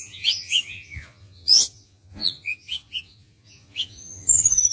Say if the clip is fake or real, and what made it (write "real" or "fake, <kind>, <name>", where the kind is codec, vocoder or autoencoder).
fake, vocoder, Vocos